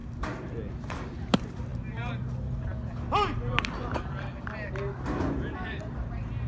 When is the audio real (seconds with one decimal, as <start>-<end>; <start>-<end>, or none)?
0.0-6.5